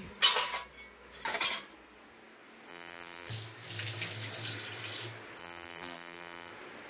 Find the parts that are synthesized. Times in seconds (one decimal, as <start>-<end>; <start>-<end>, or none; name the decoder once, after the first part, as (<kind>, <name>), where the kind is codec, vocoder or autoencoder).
2.7-3.3 (vocoder, BigVGAN v2); 5.4-6.5